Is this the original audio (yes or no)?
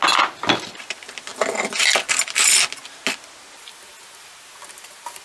yes